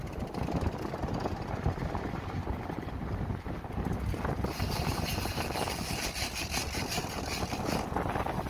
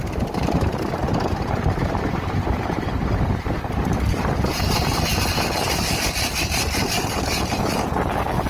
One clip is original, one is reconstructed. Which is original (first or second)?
first